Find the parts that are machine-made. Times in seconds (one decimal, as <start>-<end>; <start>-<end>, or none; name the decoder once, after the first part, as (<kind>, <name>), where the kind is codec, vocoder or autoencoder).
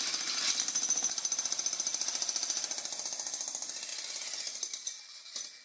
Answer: none